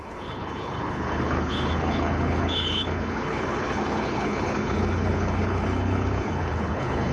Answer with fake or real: fake